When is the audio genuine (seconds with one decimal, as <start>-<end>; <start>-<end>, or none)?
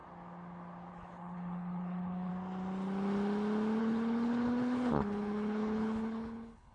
0.0-0.9; 2.3-3.8